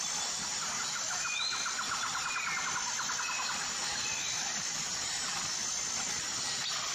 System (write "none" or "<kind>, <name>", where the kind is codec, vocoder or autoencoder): none